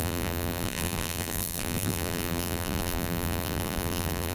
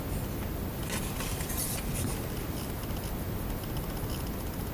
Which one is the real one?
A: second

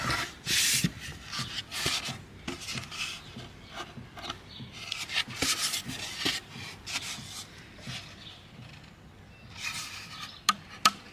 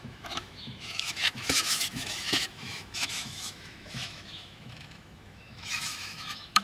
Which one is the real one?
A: first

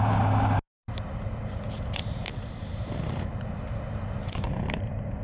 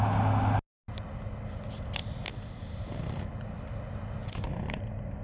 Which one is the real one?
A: second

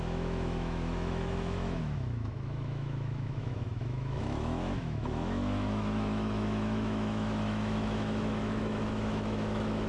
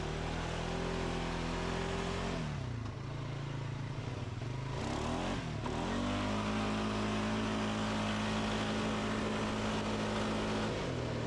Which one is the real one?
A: second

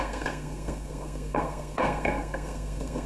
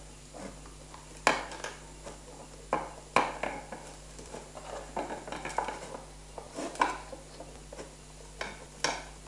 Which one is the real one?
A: second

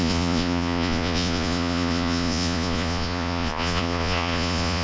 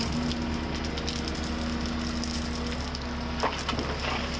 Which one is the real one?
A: second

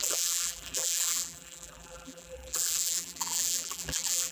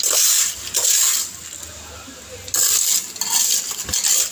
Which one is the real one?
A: second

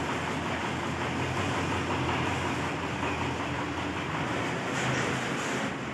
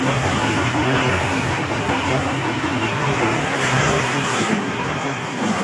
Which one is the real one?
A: first